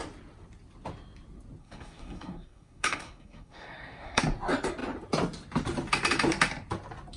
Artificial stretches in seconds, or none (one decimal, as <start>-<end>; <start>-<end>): 1.6-4.2